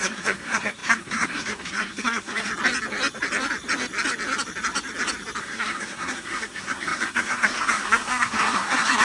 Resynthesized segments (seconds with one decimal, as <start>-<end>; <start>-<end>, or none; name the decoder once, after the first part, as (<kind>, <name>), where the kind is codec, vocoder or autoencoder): 0.0-2.5 (codec, SNAC); 5.4-9.0